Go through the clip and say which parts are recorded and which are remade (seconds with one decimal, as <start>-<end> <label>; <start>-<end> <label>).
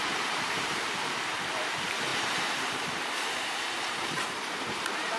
0.0-5.2 remade